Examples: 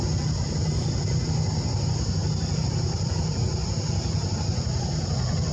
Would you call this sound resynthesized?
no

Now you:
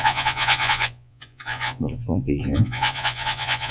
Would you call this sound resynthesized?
yes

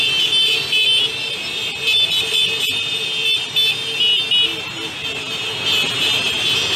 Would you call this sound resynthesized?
no